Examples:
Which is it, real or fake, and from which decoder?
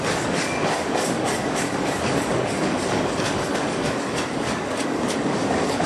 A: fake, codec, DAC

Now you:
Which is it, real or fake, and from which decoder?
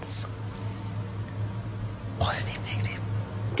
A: real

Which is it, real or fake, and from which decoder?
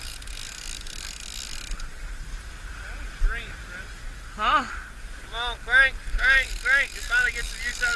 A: real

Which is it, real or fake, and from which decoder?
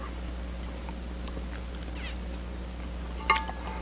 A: real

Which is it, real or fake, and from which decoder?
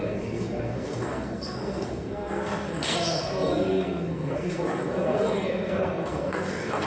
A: fake, codec, SNAC